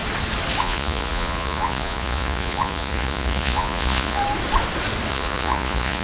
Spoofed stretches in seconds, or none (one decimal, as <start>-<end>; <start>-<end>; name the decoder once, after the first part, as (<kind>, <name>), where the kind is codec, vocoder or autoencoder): 0.6-4.2 (vocoder, Vocos); 5.1-6.0